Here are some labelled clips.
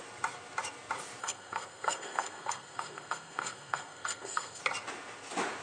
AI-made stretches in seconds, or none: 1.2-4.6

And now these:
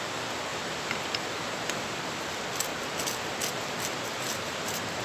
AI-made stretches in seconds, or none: none

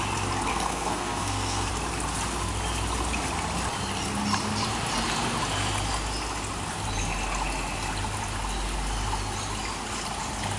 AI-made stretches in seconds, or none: 0.5-1.7